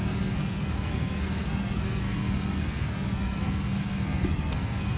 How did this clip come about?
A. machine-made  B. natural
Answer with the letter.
A